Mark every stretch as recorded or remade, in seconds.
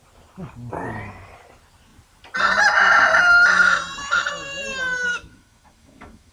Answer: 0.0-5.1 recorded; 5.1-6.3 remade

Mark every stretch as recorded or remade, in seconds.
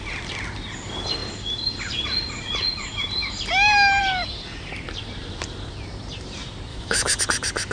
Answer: 0.0-6.7 recorded; 6.7-7.2 remade; 7.2-7.7 recorded